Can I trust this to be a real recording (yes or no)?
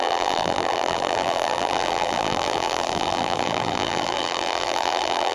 no